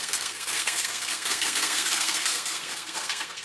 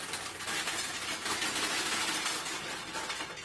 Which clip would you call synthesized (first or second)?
first